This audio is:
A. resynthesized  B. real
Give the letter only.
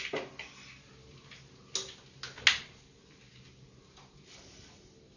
B